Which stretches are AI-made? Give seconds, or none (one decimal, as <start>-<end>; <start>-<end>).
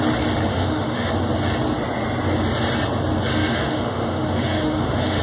0.5-1.1; 3.3-5.2